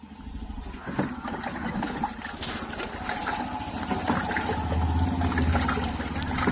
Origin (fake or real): real